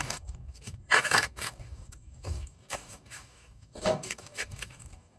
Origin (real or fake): fake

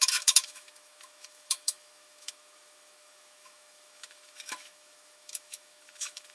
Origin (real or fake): fake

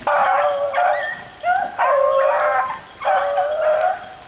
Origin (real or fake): real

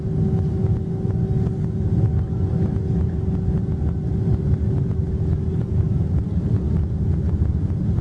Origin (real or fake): real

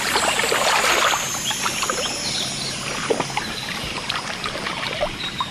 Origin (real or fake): fake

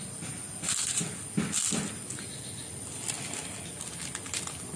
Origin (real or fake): real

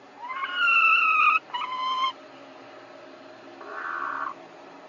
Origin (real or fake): real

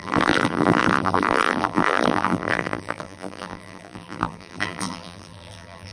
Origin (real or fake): fake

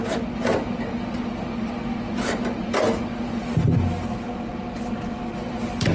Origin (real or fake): real